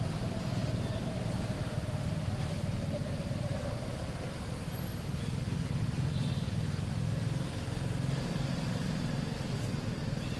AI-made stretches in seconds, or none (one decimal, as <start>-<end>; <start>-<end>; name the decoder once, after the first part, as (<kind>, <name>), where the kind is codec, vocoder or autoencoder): none

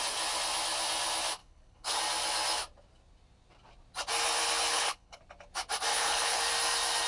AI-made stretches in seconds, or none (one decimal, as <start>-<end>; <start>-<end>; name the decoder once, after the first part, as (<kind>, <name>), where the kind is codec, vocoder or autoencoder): 1.4-2.0 (codec, HILCodec); 4.7-5.2; 5.9-6.4

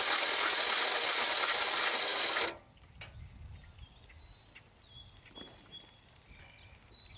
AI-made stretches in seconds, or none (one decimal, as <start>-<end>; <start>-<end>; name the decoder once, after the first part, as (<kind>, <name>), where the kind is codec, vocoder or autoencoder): none

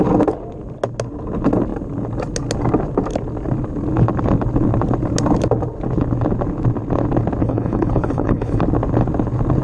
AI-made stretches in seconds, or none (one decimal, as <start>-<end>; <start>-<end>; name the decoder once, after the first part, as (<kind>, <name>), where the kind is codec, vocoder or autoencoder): 7.4-8.6 (codec, HILCodec)

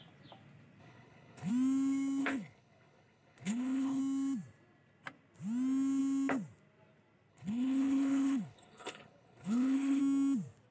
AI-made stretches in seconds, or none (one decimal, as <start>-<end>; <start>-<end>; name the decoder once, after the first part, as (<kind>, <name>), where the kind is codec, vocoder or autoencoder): 0.8-1.5 (codec, HILCodec); 2.2-4.0; 7.3-10.0

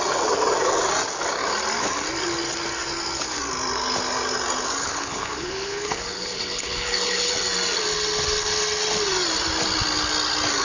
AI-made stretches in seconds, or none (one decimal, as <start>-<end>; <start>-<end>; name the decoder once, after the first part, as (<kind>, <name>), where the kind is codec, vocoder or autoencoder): 4.8-7.3 (codec, HILCodec)